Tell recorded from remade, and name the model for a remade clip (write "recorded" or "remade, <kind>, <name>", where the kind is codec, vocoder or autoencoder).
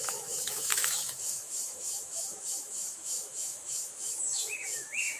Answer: remade, autoencoder, DAC-VAE